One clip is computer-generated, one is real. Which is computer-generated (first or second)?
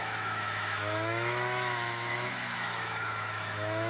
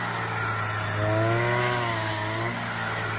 first